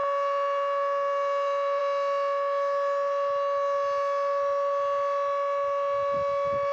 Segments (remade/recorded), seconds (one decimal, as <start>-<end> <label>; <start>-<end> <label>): 0.0-1.8 remade; 1.8-6.7 recorded